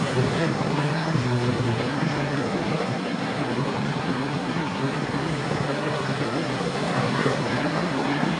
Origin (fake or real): fake